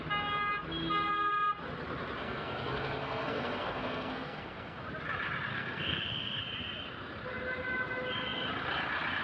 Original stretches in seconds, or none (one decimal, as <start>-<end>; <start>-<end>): 0.0-2.2; 4.8-5.5; 6.4-9.2